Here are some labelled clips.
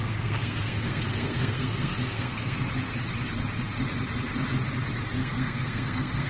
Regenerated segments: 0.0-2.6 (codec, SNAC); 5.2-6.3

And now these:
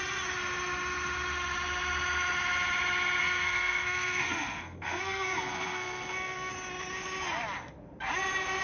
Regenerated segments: 3.2-6.5 (codec, SNAC)

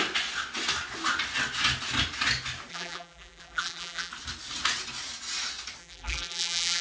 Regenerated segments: 2.7-4.1 (vocoder, BigVGAN v2); 5.8-6.8

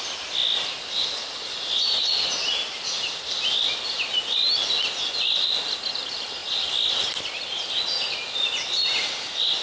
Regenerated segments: none

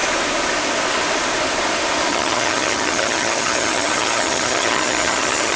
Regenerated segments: 2.1-5.6 (vocoder, HiFi-GAN)

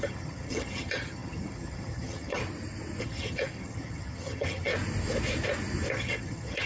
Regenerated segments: 0.0-2.4 (vocoder, HiFi-GAN); 3.0-4.7; 5.9-6.7

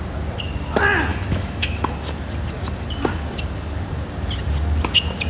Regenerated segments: 1.1-1.9 (autoencoder, DAC-VAE)

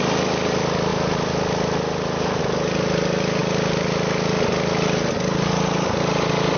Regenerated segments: none